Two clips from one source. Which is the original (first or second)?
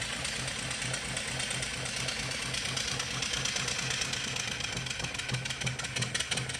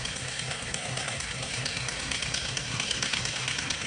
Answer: first